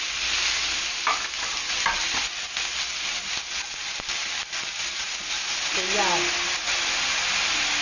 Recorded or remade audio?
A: recorded